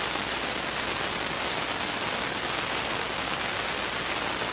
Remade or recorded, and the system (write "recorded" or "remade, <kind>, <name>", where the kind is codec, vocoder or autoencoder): recorded